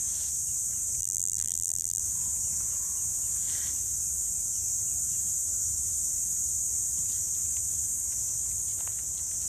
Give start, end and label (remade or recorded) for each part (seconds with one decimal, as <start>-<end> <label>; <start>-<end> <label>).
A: 0.0-1.0 recorded; 1.0-2.0 remade; 2.0-9.5 recorded